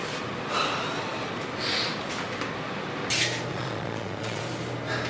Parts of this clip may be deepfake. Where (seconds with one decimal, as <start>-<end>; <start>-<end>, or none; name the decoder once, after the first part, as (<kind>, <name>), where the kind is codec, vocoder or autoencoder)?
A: 3.5-4.4 (vocoder, Vocos)